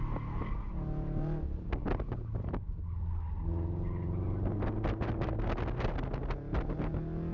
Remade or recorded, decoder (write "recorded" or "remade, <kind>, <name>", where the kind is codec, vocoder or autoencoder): recorded